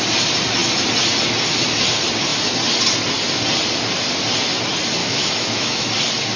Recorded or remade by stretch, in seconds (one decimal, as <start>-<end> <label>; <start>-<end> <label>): 0.0-5.0 recorded; 5.0-5.9 remade; 5.9-6.4 recorded

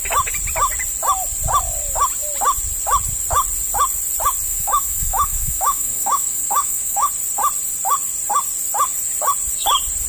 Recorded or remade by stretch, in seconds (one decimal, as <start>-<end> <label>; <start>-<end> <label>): 0.0-4.5 recorded; 4.5-7.1 remade; 7.1-10.1 recorded